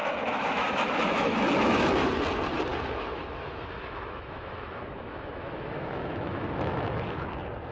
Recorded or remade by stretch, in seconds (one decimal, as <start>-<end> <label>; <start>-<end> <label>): 0.0-2.1 remade; 2.1-2.7 recorded; 2.7-7.3 remade; 7.3-7.7 recorded